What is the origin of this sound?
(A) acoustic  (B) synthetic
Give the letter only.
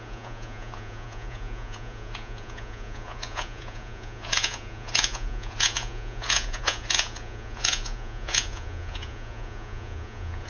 B